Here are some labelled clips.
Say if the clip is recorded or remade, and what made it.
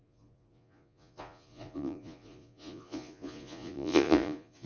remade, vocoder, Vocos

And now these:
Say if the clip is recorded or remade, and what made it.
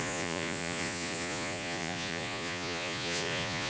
remade, vocoder, Vocos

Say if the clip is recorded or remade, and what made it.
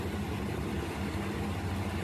recorded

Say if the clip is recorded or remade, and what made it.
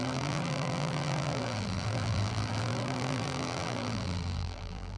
remade, vocoder, BigVGAN v2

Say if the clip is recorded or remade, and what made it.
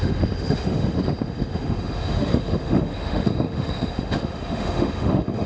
remade, autoencoder, DAC-VAE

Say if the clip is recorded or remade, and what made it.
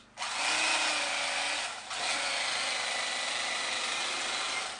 recorded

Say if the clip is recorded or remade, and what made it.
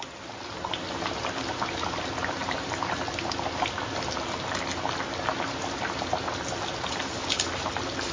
recorded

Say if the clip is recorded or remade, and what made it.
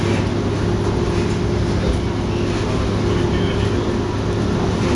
recorded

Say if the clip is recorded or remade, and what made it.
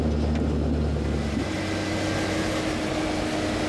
recorded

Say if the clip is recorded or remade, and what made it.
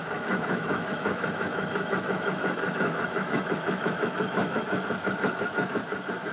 remade, autoencoder, DAC-VAE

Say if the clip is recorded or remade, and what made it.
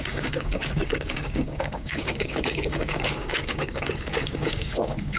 remade, codec, DAC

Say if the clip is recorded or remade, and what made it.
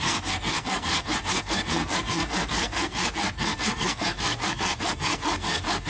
remade, codec, SNAC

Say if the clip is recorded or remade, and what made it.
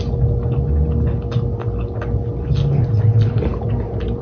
recorded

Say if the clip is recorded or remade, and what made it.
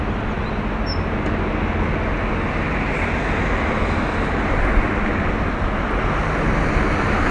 recorded